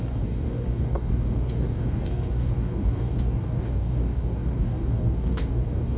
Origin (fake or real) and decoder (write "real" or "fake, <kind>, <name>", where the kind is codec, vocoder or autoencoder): fake, codec, DAC